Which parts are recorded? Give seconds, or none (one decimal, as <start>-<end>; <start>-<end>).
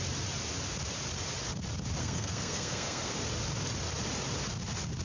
0.0-2.0; 3.2-5.0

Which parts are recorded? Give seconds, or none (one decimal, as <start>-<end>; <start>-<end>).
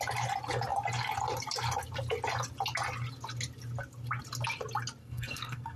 0.0-5.0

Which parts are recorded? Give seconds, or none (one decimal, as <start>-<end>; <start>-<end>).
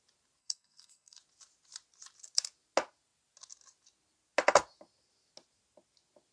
0.0-0.4; 1.2-6.3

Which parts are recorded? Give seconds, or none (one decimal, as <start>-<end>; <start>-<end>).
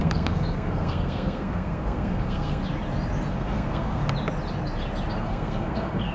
2.6-3.3; 4.0-5.2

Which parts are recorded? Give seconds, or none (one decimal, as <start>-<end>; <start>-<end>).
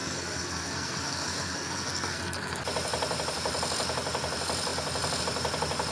2.6-5.9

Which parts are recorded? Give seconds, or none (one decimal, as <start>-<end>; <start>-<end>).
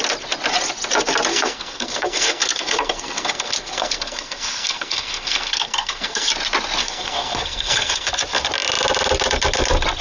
0.0-1.3; 6.3-6.8; 8.1-10.0